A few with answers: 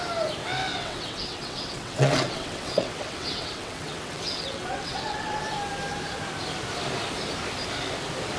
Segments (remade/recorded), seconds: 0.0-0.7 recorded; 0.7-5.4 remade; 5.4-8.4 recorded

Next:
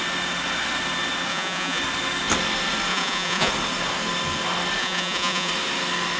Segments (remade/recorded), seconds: 0.0-1.3 recorded; 1.3-1.8 remade; 1.8-2.9 recorded; 2.9-3.5 remade; 3.5-4.8 recorded; 4.8-5.5 remade; 5.5-6.2 recorded

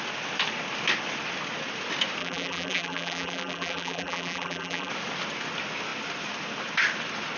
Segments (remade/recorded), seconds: 0.0-2.2 recorded; 2.2-4.9 remade; 4.9-7.4 recorded

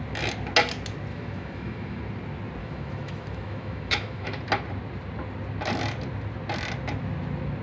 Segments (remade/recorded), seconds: 0.0-1.1 recorded; 1.1-2.0 remade; 2.0-2.6 recorded; 2.6-4.4 remade; 4.4-7.6 recorded

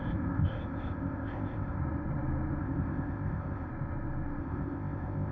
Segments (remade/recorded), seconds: 0.0-1.8 remade; 1.8-2.6 recorded; 2.6-3.7 remade; 3.7-4.4 recorded; 4.4-5.3 remade

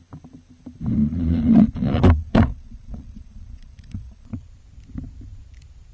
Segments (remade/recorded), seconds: 0.0-1.0 recorded; 1.0-4.5 remade; 4.5-5.9 recorded

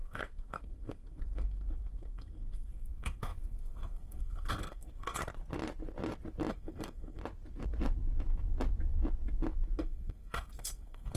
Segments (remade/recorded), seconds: 0.0-5.2 remade; 5.2-6.5 recorded; 6.5-7.2 remade; 7.2-9.8 recorded; 9.8-11.2 remade